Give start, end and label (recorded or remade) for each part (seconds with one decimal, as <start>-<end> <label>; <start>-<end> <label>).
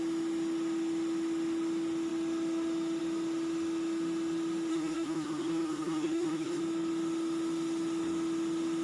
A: 0.0-4.7 recorded; 4.7-6.6 remade; 6.6-8.8 recorded